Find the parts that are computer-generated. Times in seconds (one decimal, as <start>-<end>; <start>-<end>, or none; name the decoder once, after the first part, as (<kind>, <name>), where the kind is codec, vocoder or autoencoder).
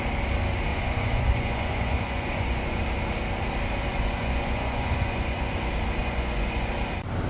0.7-2.8 (vocoder, Vocos); 3.9-5.5; 6.0-6.7